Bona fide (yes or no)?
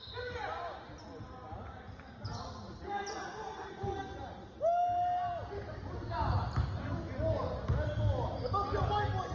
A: yes